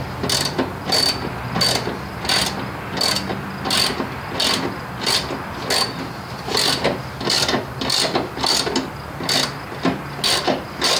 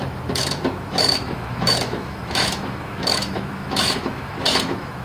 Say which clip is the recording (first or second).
first